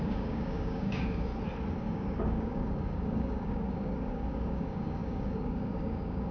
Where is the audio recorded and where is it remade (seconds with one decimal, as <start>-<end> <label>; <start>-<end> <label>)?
0.0-1.3 remade; 1.3-1.8 recorded; 1.8-6.3 remade